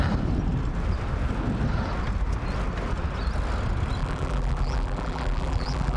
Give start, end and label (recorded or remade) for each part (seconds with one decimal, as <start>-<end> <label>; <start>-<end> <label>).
0.0-4.0 recorded; 4.0-6.0 remade